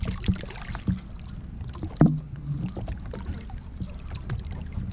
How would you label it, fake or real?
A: real